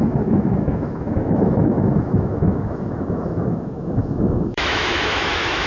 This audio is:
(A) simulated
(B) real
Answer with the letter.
A